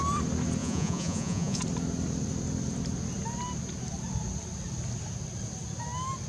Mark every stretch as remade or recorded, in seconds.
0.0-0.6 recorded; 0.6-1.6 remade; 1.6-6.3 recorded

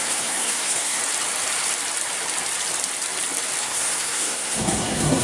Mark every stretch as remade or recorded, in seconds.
0.0-1.0 remade; 1.0-3.6 recorded; 3.6-5.2 remade

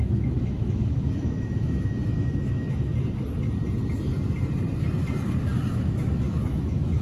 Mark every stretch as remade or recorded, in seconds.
0.0-2.9 remade; 2.9-5.7 recorded; 5.7-7.0 remade

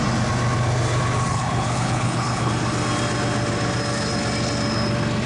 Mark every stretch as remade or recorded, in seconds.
0.0-1.3 recorded; 1.3-2.5 remade; 2.5-5.3 recorded

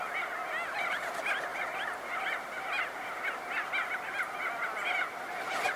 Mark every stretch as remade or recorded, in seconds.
0.0-5.8 recorded

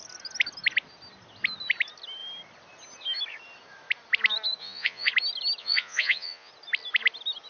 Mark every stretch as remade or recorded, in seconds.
0.0-4.6 recorded; 4.6-5.1 remade; 5.1-5.6 recorded; 5.6-6.5 remade; 6.5-7.5 recorded

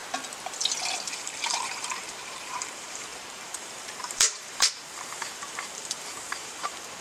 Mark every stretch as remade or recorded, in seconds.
0.0-1.1 recorded; 1.1-7.0 remade